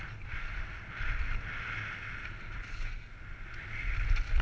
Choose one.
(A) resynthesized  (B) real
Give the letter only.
B